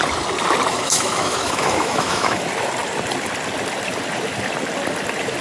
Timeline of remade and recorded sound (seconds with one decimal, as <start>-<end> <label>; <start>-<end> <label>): 0.0-0.7 recorded; 0.7-2.4 remade; 2.4-5.4 recorded